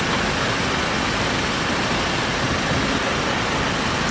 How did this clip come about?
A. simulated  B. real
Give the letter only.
B